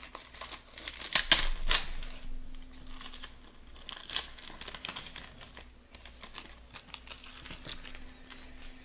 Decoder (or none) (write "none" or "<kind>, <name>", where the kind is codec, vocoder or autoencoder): none